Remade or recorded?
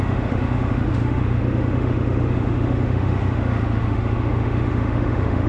remade